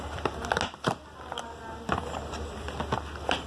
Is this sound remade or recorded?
recorded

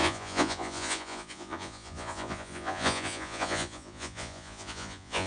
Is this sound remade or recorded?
remade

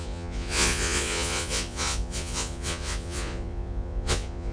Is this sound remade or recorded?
remade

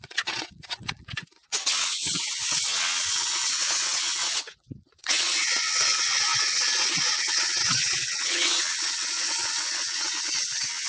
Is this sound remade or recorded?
remade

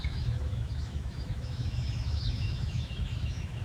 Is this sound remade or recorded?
remade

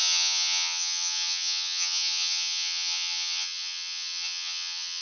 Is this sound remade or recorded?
remade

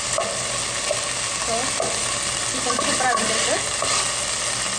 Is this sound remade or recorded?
recorded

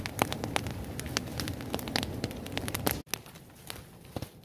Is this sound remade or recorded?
recorded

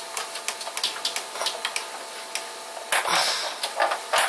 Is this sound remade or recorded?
recorded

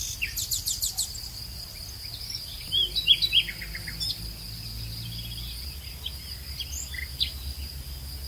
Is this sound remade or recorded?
recorded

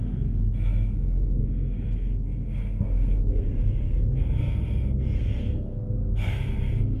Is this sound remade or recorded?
remade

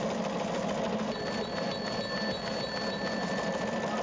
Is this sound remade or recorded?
recorded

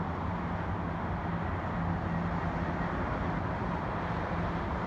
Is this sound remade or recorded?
recorded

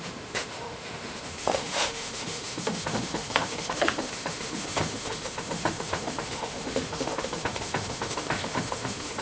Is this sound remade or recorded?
remade